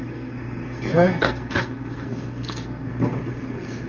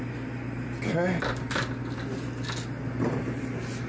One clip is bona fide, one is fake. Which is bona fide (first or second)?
second